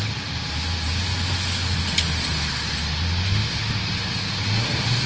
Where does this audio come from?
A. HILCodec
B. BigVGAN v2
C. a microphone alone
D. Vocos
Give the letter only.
C